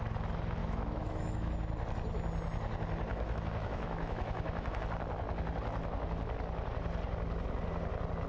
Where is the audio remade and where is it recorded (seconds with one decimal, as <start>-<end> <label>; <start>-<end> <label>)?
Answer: 0.0-0.6 recorded; 0.6-1.5 remade; 1.5-3.1 recorded; 3.1-4.8 remade; 4.8-8.3 recorded

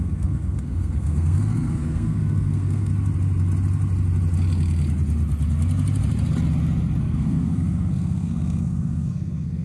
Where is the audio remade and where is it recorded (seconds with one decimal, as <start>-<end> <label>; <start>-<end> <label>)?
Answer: 0.0-2.9 remade; 2.9-7.0 recorded; 7.0-9.6 remade

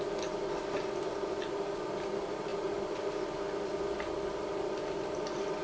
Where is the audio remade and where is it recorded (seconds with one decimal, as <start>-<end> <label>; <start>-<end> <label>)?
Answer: 0.0-5.6 recorded

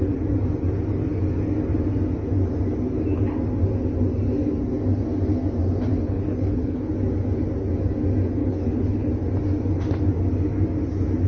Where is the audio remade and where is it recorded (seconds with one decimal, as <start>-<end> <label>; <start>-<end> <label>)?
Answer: 0.0-5.9 recorded; 5.9-6.9 remade; 6.9-8.4 recorded; 8.4-9.1 remade; 9.1-11.3 recorded

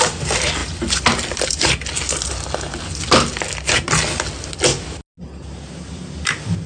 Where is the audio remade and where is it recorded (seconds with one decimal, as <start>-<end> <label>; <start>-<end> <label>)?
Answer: 0.0-6.7 recorded

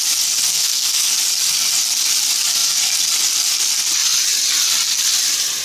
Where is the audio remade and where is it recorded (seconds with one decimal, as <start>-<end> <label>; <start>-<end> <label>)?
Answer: 0.0-0.5 recorded; 0.5-1.1 remade; 1.1-5.6 recorded

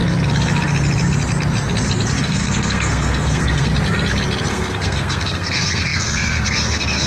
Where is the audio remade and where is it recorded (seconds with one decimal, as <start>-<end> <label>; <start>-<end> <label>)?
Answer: 0.0-2.2 recorded; 2.2-3.7 remade; 3.7-4.5 recorded; 4.5-7.1 remade